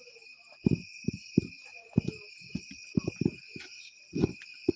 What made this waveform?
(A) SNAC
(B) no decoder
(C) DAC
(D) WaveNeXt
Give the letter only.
B